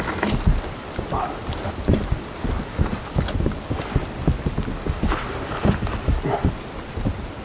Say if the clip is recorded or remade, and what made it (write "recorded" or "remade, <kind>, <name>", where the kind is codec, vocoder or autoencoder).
recorded